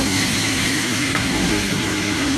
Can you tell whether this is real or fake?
fake